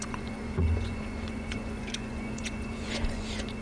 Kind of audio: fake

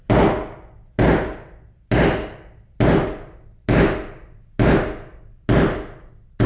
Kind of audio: real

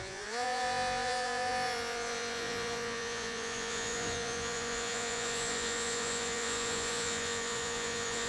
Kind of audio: fake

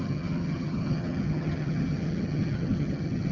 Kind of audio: fake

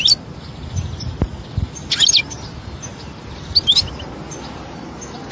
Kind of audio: real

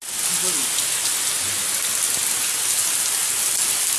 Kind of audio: real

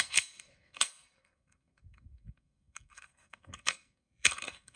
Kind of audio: fake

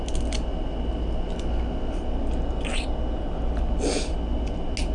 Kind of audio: real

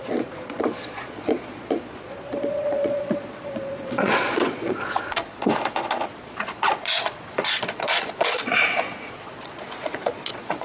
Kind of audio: fake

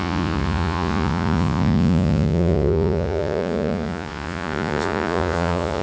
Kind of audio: fake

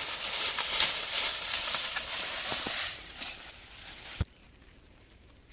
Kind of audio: fake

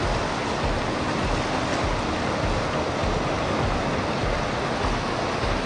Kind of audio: real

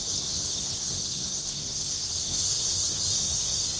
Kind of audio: fake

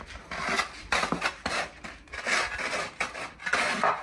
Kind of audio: real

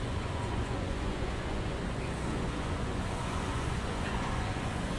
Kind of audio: fake